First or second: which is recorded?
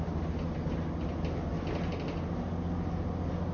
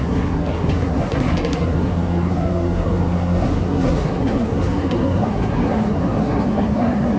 first